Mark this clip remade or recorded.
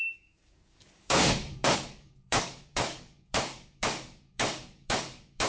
remade